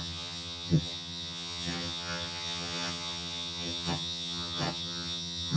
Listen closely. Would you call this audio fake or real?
fake